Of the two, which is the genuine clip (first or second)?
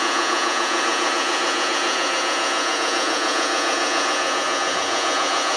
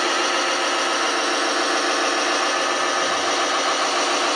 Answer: second